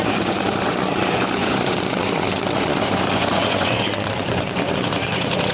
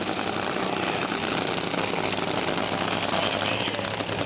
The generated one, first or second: first